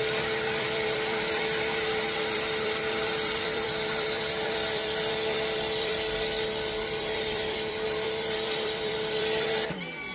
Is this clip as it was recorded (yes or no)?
no